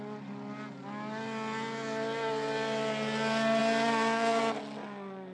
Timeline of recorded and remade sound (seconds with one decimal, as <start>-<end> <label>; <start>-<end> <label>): 0.0-5.3 recorded